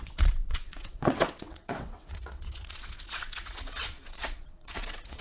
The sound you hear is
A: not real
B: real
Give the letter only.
A